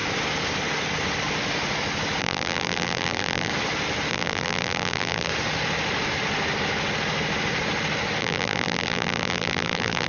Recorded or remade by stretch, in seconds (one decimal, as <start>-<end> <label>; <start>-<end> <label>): 0.0-2.2 recorded; 2.2-3.5 remade; 3.5-4.1 recorded; 4.1-5.3 remade; 5.3-8.2 recorded; 8.2-10.1 remade